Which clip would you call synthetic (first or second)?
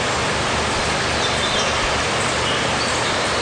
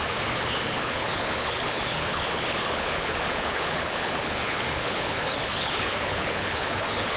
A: second